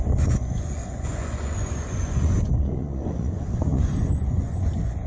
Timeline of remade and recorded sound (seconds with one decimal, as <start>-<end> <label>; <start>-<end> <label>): 0.0-5.1 remade